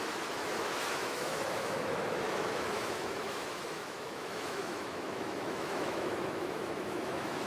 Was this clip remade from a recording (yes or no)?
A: yes